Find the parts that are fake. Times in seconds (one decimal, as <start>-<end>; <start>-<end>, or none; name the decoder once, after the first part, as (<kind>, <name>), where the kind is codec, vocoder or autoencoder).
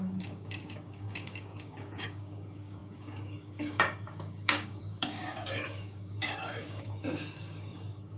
0.0-8.2 (codec, DAC)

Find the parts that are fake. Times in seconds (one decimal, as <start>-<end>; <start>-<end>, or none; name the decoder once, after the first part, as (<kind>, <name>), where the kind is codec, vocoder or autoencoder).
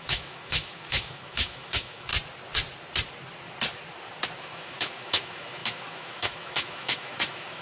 0.0-2.1 (autoencoder, DAC-VAE); 4.4-7.6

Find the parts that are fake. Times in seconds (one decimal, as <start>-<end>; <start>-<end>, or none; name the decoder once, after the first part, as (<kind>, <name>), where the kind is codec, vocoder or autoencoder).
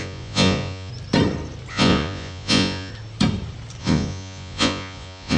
0.0-0.9 (vocoder, Vocos); 1.7-2.9; 3.8-5.4